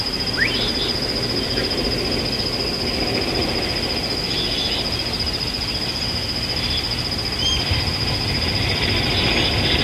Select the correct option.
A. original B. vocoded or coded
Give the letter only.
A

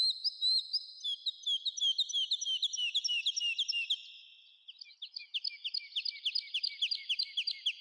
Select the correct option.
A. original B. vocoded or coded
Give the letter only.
A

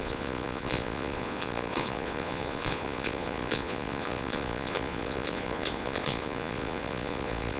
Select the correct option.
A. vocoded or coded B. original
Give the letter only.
A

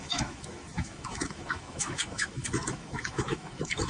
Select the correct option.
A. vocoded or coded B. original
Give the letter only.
A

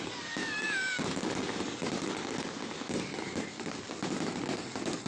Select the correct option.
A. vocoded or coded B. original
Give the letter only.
A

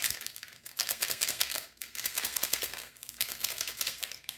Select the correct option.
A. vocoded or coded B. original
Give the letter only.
A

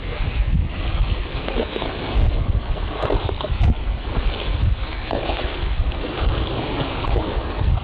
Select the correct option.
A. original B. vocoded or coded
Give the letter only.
B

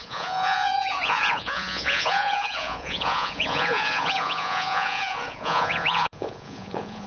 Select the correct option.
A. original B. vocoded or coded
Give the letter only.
B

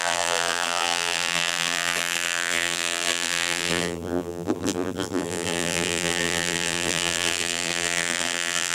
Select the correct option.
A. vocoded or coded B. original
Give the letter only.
A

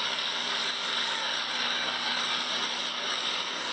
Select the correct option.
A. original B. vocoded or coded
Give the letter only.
B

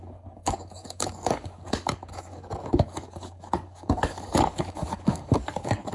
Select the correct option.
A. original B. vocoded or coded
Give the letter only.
B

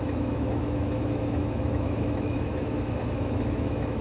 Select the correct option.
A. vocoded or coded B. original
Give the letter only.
A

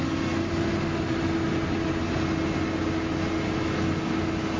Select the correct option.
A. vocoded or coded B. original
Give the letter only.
B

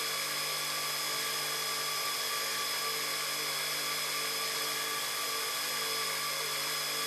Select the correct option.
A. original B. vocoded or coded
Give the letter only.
A